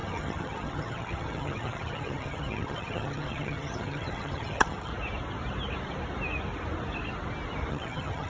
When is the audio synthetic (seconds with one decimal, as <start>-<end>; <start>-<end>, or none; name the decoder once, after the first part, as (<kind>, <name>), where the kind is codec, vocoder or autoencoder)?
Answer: 0.0-4.9 (vocoder, HiFi-GAN); 7.7-8.3